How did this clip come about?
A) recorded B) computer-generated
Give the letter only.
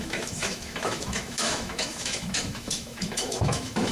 B